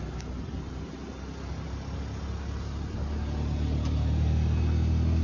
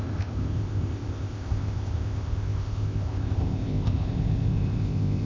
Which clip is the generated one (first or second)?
second